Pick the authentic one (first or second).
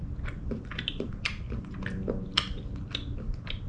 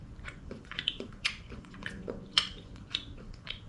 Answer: first